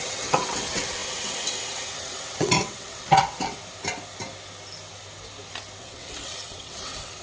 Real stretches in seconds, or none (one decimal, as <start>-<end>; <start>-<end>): 3.6-5.8